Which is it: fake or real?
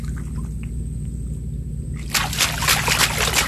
real